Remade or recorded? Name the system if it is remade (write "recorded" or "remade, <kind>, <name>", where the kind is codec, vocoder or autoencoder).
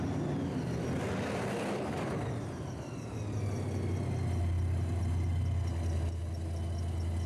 recorded